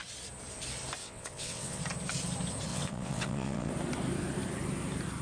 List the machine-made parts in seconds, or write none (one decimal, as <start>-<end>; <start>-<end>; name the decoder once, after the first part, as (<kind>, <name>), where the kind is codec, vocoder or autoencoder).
1.0-1.8 (vocoder, WaveNeXt); 2.7-3.7